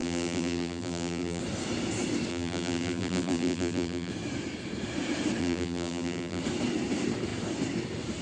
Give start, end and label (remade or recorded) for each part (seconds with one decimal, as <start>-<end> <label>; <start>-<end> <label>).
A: 0.0-1.4 remade; 1.4-2.3 recorded; 2.3-4.1 remade; 4.1-5.4 recorded; 5.4-6.4 remade; 6.4-8.2 recorded